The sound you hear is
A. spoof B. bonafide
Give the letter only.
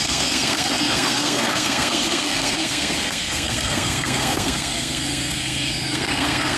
A